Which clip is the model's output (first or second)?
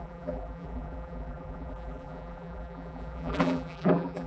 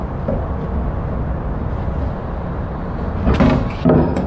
first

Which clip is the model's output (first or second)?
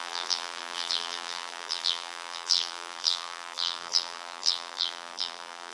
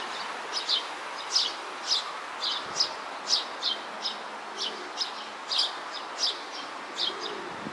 first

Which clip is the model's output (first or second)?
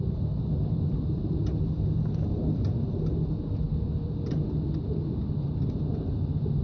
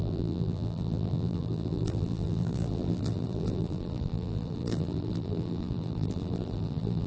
second